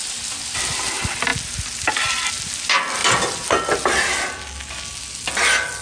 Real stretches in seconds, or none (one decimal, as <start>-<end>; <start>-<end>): 0.0-5.8